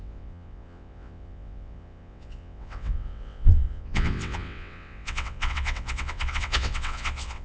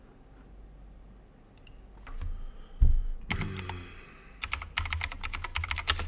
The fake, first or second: first